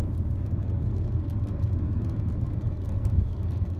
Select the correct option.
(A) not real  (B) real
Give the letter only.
A